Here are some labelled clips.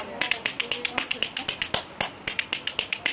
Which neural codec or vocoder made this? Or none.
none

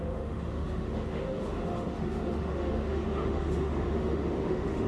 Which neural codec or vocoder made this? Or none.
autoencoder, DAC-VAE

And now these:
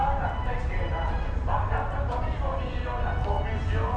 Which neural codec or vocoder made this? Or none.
none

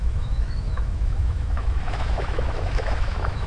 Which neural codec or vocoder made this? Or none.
autoencoder, DAC-VAE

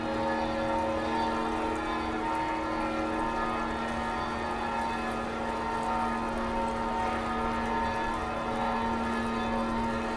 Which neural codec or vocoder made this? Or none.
none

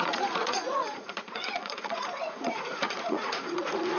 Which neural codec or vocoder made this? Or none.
vocoder, Vocos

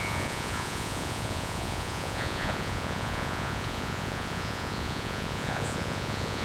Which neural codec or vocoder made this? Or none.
vocoder, Vocos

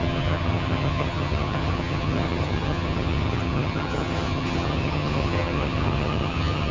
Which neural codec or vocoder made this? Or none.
vocoder, HiFi-GAN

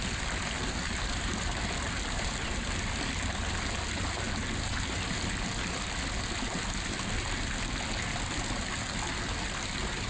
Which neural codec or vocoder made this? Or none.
none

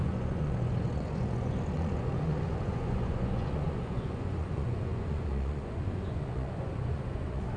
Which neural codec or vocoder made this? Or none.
vocoder, Vocos